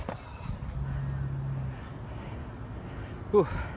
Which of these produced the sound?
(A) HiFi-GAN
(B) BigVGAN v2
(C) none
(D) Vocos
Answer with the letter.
C